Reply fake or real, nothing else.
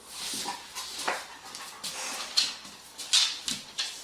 real